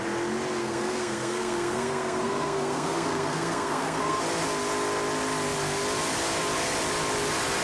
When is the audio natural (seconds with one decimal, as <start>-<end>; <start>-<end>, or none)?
0.0-0.6; 4.2-7.6